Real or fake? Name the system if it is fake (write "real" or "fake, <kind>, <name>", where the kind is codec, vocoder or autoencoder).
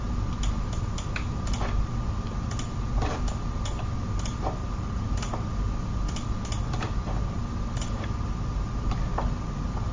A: real